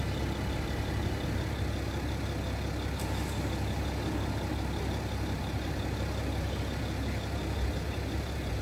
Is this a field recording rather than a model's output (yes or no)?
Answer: yes